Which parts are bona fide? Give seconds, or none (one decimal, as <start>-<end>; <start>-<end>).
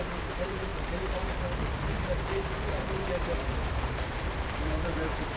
none